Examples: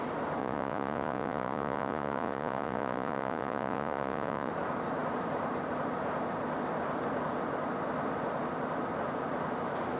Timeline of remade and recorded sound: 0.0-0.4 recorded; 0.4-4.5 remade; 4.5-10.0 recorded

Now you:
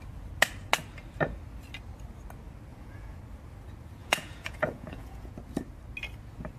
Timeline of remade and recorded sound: 0.0-2.7 recorded; 2.7-3.2 remade; 3.2-4.0 recorded; 4.0-5.3 remade; 5.3-6.6 recorded

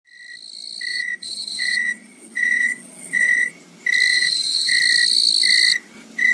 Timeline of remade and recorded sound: 0.0-0.9 recorded; 0.9-3.5 remade; 3.5-4.1 recorded; 4.1-4.7 remade; 4.7-6.3 recorded

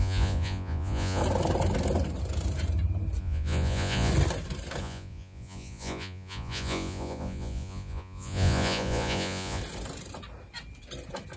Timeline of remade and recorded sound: 0.0-1.2 remade; 1.2-3.2 recorded; 3.2-4.1 remade; 4.1-4.8 recorded; 4.8-9.6 remade; 9.6-11.4 recorded